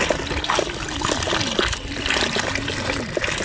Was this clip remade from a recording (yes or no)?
no